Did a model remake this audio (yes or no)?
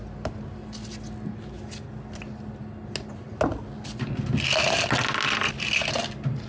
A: no